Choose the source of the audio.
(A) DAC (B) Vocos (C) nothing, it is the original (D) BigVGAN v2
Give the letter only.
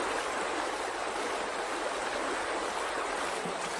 C